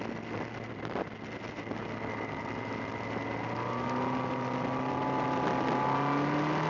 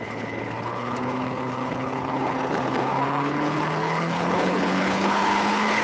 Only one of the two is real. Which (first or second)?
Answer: first